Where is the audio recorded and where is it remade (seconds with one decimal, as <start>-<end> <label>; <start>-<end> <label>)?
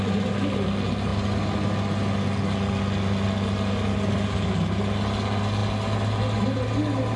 0.0-7.2 recorded